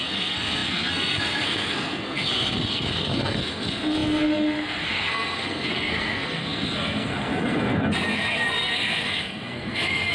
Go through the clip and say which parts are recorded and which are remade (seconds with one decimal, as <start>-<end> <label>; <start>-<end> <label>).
0.0-10.1 remade